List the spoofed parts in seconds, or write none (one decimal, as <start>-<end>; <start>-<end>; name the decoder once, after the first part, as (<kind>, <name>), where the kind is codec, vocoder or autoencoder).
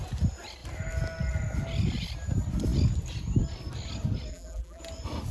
4.3-4.8 (vocoder, BigVGAN v2)